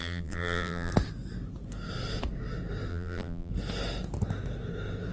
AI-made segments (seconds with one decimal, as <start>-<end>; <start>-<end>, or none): 0.0-0.9; 2.9-3.5